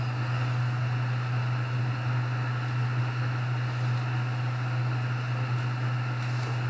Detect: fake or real real